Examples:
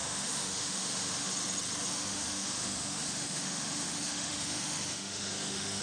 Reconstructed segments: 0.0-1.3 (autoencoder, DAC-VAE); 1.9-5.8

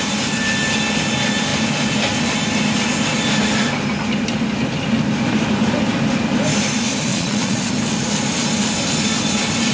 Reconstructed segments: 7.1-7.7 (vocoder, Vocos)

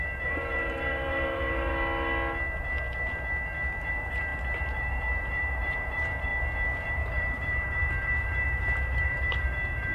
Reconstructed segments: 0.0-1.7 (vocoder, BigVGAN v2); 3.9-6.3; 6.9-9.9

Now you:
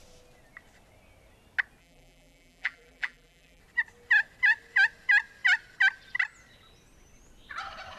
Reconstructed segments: 1.8-3.6 (vocoder, BigVGAN v2)